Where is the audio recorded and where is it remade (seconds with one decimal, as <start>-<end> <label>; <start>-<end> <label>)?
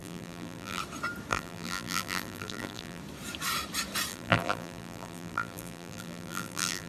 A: 0.0-0.8 remade; 0.8-1.3 recorded; 1.3-3.0 remade; 3.0-4.1 recorded; 4.1-6.9 remade